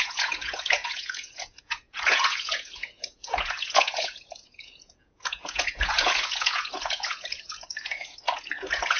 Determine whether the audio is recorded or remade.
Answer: remade